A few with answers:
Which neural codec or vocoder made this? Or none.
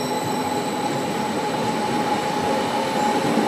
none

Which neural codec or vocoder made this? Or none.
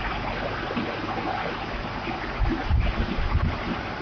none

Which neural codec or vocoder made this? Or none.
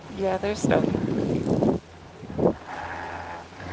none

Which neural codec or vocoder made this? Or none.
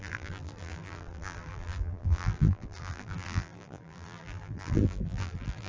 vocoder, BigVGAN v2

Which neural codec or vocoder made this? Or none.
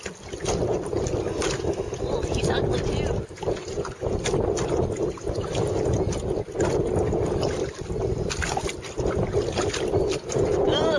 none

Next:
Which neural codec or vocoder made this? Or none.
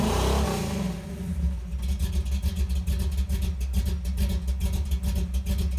none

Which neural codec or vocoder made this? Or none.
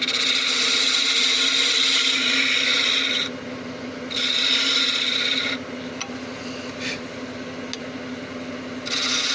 none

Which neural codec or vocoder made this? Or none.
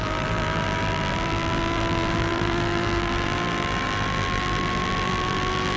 vocoder, BigVGAN v2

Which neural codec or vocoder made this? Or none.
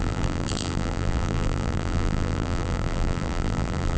vocoder, BigVGAN v2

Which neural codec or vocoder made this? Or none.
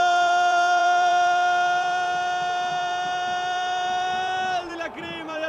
vocoder, BigVGAN v2